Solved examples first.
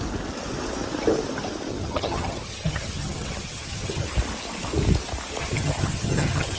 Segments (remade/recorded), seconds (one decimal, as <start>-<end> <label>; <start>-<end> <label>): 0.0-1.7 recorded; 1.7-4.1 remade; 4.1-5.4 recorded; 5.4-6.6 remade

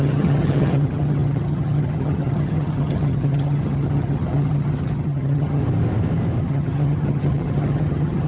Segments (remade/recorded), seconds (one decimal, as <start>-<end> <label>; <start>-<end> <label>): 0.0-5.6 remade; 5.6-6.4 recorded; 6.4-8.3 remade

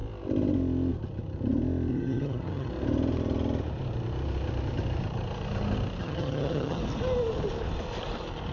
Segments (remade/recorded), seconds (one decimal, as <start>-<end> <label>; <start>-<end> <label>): 0.0-1.9 recorded; 1.9-2.7 remade; 2.7-6.0 recorded; 6.0-6.8 remade; 6.8-8.5 recorded

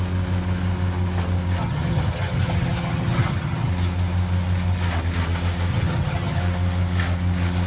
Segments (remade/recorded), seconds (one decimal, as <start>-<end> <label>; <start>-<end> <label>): 0.0-1.6 recorded; 1.6-3.7 remade; 3.7-5.7 recorded; 5.7-6.4 remade; 6.4-7.7 recorded

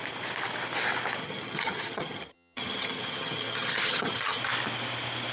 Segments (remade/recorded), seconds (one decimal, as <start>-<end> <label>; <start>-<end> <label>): 0.0-1.2 recorded; 1.2-4.4 remade; 4.4-5.3 recorded